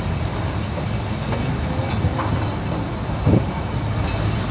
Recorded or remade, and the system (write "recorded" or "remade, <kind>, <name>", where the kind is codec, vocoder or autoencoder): recorded